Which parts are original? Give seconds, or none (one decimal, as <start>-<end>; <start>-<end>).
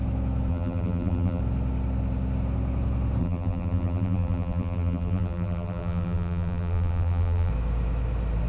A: 0.0-0.5; 1.4-3.2; 7.5-8.5